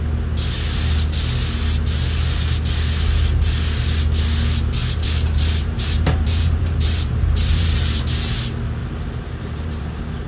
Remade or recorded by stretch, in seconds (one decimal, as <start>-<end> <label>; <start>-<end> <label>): 0.0-4.8 recorded; 4.8-8.0 remade; 8.0-8.8 recorded; 8.8-9.8 remade; 9.8-10.3 recorded